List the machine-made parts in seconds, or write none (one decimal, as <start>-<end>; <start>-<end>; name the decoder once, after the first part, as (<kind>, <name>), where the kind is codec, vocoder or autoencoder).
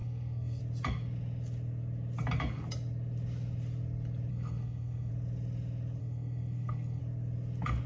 0.0-0.6 (codec, SNAC); 4.3-5.1; 6.0-7.0